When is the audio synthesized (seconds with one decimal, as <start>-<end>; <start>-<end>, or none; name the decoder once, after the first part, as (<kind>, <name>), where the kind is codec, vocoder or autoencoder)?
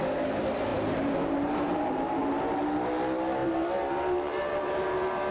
0.7-1.8 (vocoder, BigVGAN v2); 3.4-5.3